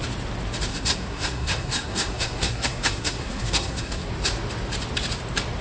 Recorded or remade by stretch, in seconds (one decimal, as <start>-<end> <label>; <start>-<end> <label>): 0.0-0.7 recorded; 0.7-4.1 remade; 4.1-5.6 recorded